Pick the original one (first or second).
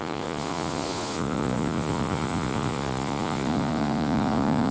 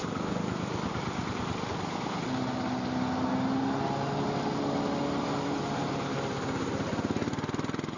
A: second